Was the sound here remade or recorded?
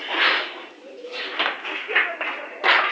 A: recorded